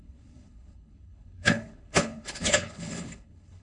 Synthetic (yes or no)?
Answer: yes